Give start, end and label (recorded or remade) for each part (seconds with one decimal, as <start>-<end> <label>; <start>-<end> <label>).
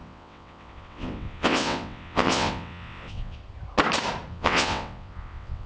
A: 0.0-3.4 remade; 3.4-4.3 recorded; 4.3-5.7 remade